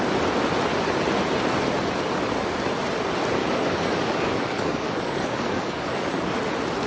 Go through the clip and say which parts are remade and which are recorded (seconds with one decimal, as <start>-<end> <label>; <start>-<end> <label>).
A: 0.0-3.4 recorded; 3.4-6.4 remade; 6.4-6.9 recorded